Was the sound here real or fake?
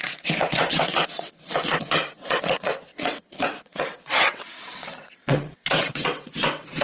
fake